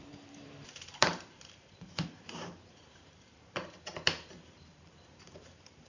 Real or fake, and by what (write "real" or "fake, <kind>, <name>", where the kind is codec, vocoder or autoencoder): fake, vocoder, BigVGAN v2